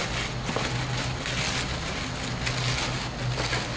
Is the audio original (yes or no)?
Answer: yes